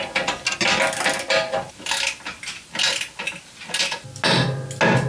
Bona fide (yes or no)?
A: yes